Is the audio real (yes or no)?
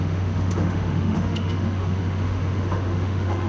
no